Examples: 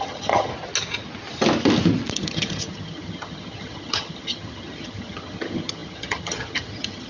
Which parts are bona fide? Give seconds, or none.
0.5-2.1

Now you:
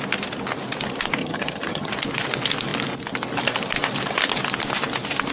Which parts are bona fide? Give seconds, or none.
0.0-1.2; 1.9-5.3

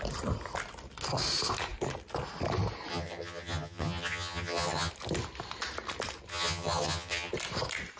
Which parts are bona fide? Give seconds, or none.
0.0-2.9; 4.9-6.3; 7.3-8.0

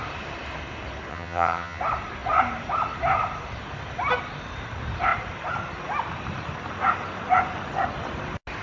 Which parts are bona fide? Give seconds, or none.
0.0-1.1; 1.8-8.6

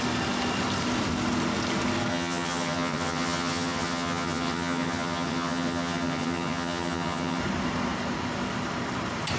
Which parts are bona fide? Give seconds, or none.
0.0-2.1; 7.4-9.4

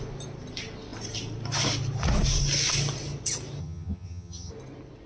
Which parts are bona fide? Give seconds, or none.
0.0-3.6; 4.5-5.1

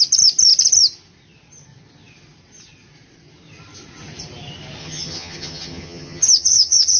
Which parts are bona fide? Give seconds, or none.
0.0-4.8